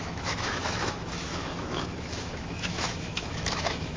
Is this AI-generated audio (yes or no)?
yes